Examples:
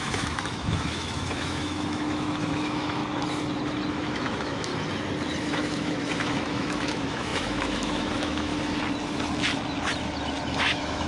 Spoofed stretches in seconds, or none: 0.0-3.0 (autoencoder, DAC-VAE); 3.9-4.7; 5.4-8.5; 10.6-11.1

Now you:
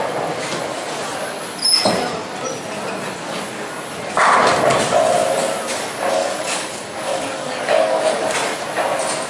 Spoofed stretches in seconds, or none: 6.2-8.3 (codec, DAC)

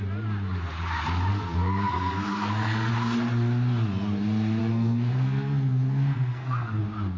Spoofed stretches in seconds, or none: 1.3-2.9 (codec, SNAC); 4.6-6.8

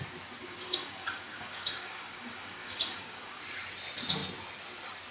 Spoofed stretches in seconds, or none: 0.4-3.4 (codec, DAC)

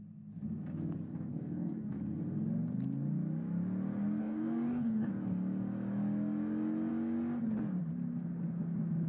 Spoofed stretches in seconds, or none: 1.3-2.0 (codec, DAC); 4.2-5.1

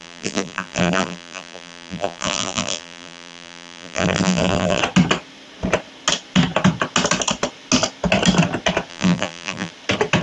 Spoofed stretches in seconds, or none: 0.0-4.8 (vocoder, BigVGAN v2); 8.9-9.7

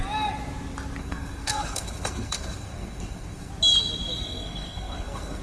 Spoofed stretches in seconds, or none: 1.0-3.5 (codec, SNAC); 4.1-5.4